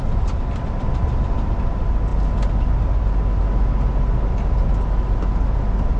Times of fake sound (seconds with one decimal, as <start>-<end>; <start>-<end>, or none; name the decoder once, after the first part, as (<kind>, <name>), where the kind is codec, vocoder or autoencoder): none